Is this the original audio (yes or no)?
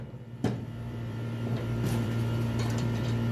no